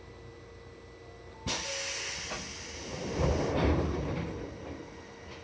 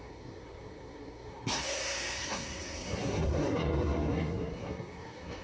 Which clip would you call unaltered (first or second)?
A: first